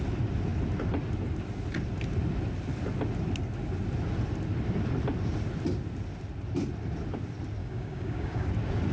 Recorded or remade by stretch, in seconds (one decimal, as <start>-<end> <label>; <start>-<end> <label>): 0.0-7.6 recorded; 7.6-8.5 remade; 8.5-8.9 recorded